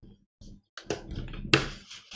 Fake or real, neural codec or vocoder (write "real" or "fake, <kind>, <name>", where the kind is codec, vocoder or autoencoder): real